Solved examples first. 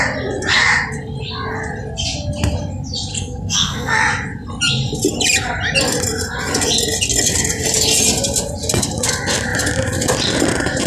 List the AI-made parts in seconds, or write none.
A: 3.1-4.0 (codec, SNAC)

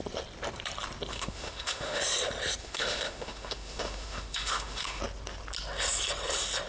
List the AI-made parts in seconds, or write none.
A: 1.1-2.0 (autoencoder, DAC-VAE); 2.6-5.0

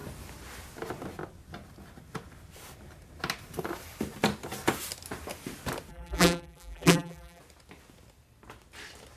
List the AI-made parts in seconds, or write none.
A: 5.9-7.4 (vocoder, BigVGAN v2)

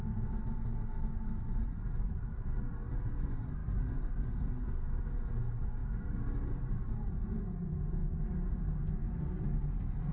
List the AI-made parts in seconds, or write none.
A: 5.8-7.4 (vocoder, BigVGAN v2)

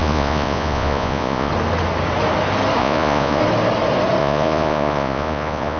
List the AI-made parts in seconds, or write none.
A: 0.0-1.5 (vocoder, Vocos); 2.8-3.4; 4.2-5.8

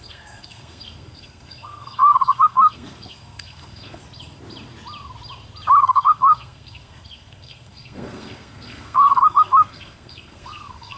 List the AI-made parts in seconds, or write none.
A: 0.0-4.0 (codec, SNAC); 5.8-11.0

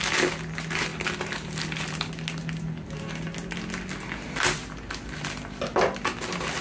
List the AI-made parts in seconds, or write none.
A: none